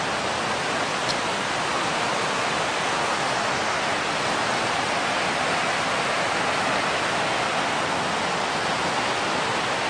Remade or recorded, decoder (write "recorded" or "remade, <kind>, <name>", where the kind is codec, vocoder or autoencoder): recorded